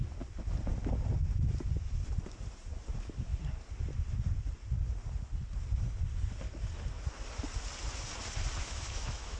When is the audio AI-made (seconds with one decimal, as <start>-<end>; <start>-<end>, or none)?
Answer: 8.6-9.4